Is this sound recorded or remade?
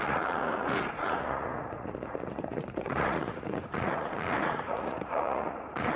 remade